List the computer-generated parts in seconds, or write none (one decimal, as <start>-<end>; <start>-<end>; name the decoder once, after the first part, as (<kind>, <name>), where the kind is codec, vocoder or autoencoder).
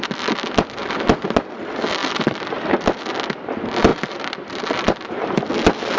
2.0-3.0 (vocoder, BigVGAN v2); 3.9-5.5